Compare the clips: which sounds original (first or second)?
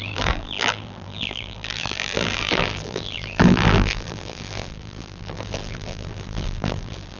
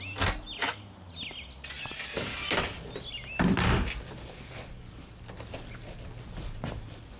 second